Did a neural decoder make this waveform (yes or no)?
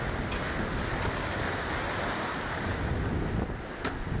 no